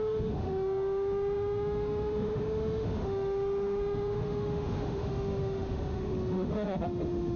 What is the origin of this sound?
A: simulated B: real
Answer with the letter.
A